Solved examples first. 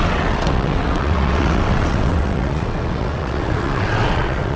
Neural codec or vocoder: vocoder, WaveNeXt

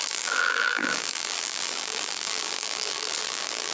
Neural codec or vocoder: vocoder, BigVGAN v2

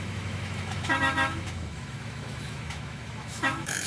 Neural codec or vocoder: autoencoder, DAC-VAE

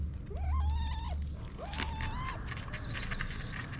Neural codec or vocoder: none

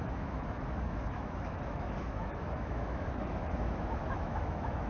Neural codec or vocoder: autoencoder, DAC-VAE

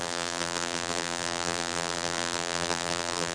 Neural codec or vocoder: vocoder, BigVGAN v2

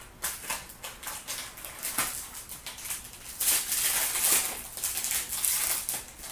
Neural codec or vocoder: none